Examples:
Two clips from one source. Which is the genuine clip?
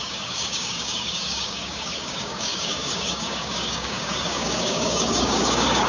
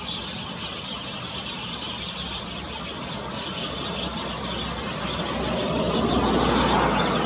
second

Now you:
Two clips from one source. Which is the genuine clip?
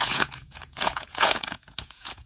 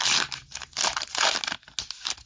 second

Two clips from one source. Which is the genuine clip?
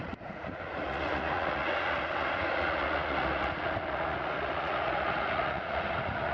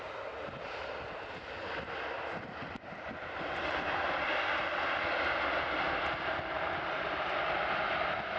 second